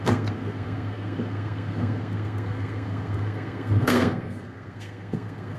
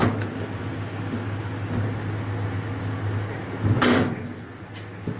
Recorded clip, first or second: second